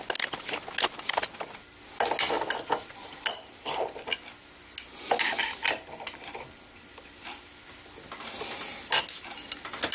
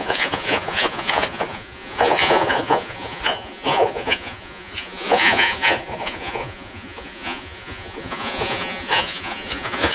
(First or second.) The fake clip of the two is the second